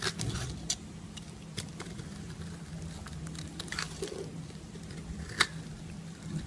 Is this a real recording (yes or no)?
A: yes